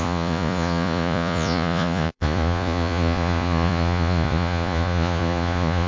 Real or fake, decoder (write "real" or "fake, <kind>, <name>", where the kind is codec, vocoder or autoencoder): fake, vocoder, Vocos